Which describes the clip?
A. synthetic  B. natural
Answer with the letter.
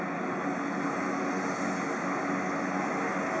B